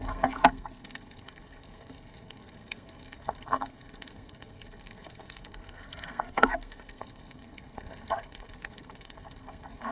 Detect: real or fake fake